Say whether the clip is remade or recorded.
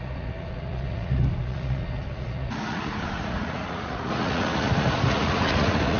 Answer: remade